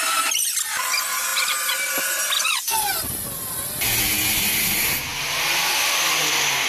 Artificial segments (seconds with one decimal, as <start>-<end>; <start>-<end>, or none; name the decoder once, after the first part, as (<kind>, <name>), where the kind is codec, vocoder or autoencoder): none